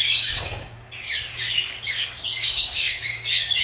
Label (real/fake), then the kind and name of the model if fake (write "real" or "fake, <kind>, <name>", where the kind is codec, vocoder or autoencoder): fake, codec, DAC